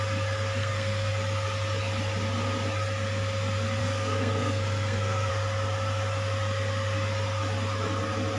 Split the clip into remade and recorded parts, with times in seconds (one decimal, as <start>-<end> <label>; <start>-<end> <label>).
0.0-0.6 recorded; 0.6-1.1 remade; 1.1-3.8 recorded; 3.8-5.3 remade; 5.3-8.4 recorded